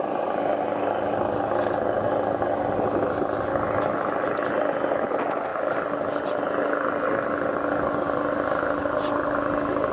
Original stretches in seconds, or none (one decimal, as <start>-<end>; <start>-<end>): 0.0-9.9

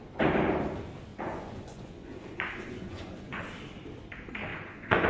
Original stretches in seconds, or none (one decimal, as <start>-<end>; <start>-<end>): 0.0-1.1; 3.4-4.5

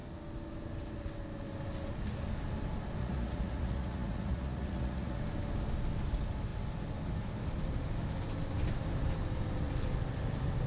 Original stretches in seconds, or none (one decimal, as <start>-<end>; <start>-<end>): 0.0-3.0; 5.2-10.7

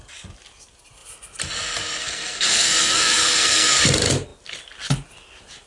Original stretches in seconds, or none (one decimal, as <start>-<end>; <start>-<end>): 0.0-2.0; 3.8-5.7

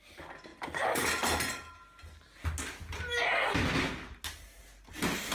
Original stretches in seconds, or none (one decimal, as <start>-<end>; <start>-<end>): 0.0-5.3